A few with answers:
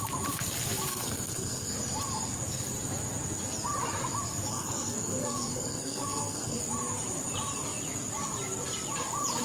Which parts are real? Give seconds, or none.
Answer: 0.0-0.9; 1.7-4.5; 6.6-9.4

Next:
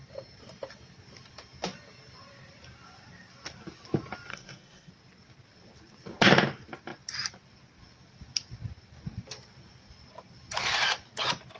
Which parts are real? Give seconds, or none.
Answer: 0.0-4.3; 4.9-11.6

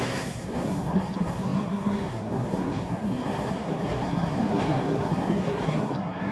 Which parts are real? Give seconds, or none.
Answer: none

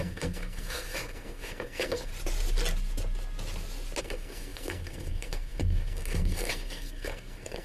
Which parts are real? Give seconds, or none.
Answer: 2.1-4.0

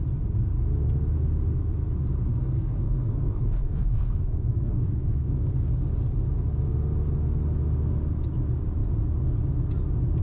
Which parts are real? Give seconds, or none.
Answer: 0.0-2.3; 5.5-10.2

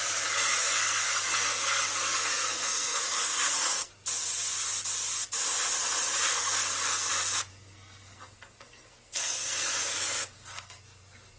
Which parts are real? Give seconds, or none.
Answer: 0.0-0.6; 3.9-6.3; 7.1-7.5; 10.8-11.4

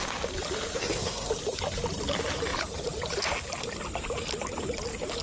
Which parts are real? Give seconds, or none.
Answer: 0.0-0.8; 1.3-5.2

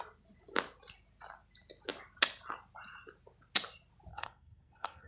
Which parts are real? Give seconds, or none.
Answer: 0.0-4.1